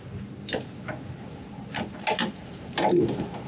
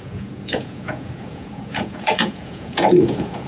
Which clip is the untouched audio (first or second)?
first